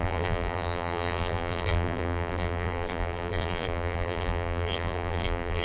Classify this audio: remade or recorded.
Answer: remade